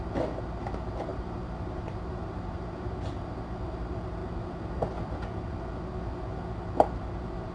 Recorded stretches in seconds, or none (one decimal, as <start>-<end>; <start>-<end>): 0.0-1.1; 2.8-7.5